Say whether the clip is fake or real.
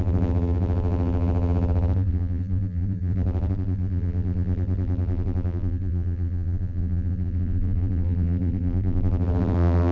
fake